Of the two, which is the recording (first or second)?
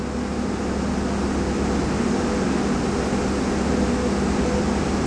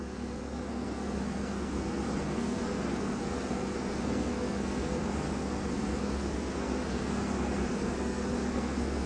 first